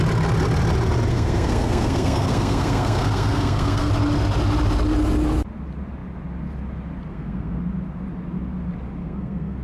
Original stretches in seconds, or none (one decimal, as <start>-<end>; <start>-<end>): 0.0-1.1; 3.9-7.1; 7.6-9.0